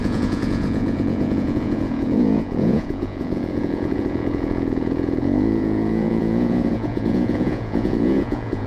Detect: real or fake fake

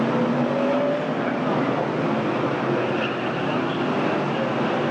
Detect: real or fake real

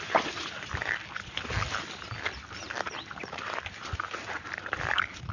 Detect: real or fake fake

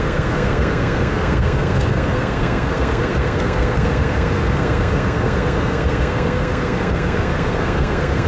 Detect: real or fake fake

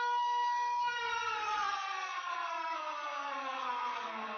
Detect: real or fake fake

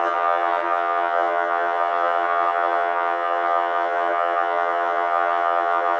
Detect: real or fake fake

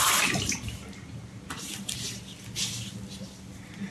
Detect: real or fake real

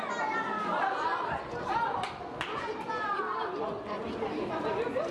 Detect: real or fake real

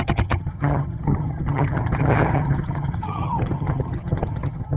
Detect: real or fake fake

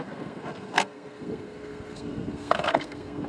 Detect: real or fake fake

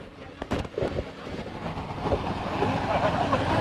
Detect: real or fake fake